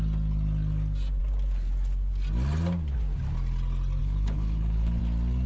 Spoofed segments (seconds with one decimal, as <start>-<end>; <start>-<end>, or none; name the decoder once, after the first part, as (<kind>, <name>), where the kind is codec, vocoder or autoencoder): 4.0-5.0 (codec, HILCodec)